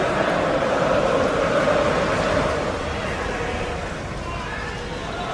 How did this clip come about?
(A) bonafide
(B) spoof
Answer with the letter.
A